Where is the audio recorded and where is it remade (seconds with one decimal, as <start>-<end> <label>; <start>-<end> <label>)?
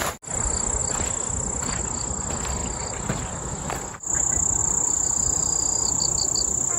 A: 0.0-6.8 recorded